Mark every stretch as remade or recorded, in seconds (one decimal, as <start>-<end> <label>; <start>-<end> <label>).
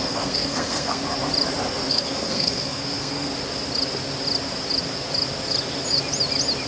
0.0-1.0 remade; 1.0-1.9 recorded; 1.9-3.3 remade; 3.3-6.7 recorded